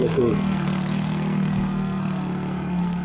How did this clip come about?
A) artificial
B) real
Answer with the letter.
A